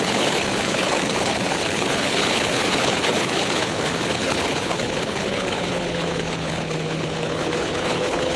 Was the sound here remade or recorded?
remade